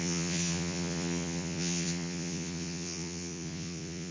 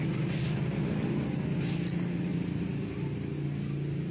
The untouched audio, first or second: second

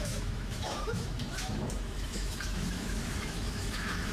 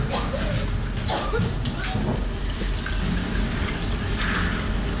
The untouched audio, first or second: second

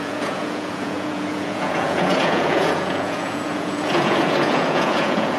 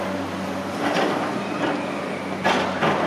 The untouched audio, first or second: second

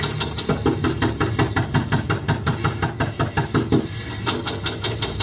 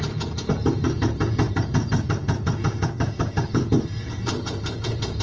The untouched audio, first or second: first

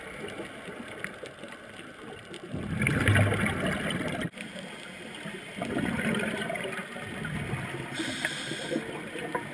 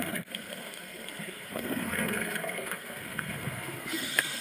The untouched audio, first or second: first